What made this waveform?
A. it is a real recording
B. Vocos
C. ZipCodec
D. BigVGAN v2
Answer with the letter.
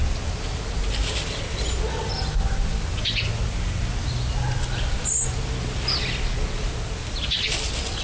A